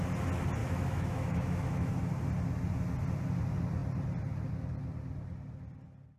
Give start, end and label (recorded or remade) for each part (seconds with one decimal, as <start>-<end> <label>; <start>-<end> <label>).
0.0-0.6 recorded; 0.6-1.9 remade; 1.9-6.2 recorded

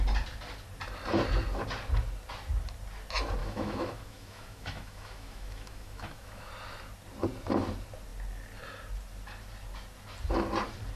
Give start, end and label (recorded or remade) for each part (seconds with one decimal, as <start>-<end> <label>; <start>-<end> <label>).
0.0-3.4 recorded; 3.4-6.5 remade; 6.5-11.0 recorded

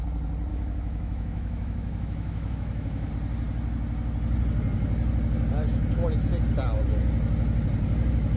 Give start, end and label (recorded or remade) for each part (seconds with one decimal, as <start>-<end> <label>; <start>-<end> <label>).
0.0-0.5 recorded; 0.5-3.1 remade; 3.1-8.4 recorded

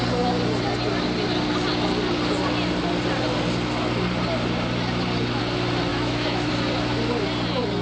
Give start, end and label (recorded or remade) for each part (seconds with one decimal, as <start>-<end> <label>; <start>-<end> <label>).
0.0-5.9 recorded; 5.9-6.5 remade; 6.5-7.8 recorded

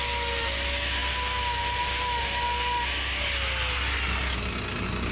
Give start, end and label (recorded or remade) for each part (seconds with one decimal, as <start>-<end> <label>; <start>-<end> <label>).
0.0-5.1 recorded

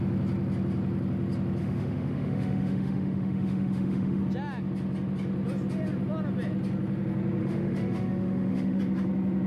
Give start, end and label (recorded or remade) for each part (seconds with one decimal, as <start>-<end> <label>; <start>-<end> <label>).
0.0-1.6 recorded; 1.6-4.2 remade; 4.2-7.4 recorded; 7.4-8.8 remade; 8.8-9.5 recorded

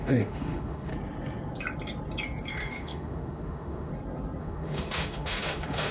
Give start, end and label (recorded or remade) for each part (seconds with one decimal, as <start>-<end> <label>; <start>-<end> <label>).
0.0-0.9 remade; 0.9-2.5 recorded; 2.5-3.9 remade; 3.9-4.4 recorded; 4.4-5.9 remade

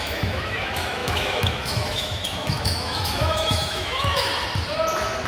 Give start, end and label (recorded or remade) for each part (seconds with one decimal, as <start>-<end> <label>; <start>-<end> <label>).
0.0-4.3 remade; 4.3-5.3 recorded